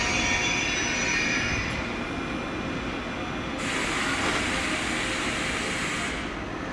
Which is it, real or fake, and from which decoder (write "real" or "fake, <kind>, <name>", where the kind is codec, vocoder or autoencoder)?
real